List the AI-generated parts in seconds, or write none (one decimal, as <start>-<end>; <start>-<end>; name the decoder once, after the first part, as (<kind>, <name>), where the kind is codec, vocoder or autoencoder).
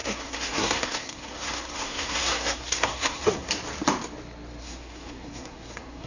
0.0-3.5 (codec, SNAC); 4.6-6.1